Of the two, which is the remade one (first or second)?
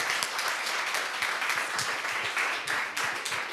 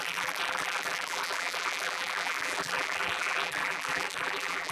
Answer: second